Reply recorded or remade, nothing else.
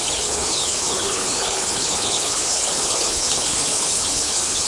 remade